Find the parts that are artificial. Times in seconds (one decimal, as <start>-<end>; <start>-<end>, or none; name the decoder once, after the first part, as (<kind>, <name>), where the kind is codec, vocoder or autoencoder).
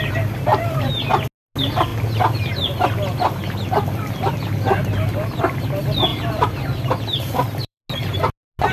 0.5-1.1 (vocoder, BigVGAN v2); 6.1-7.8